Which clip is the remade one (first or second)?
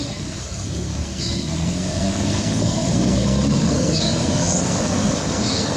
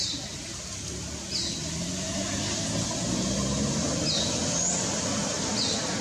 first